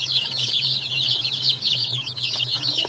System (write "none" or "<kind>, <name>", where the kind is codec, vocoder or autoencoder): codec, DAC